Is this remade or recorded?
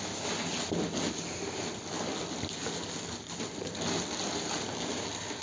recorded